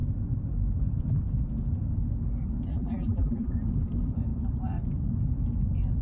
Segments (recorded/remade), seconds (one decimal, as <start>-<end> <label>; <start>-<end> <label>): 0.0-2.7 recorded; 2.7-3.5 remade; 3.5-6.0 recorded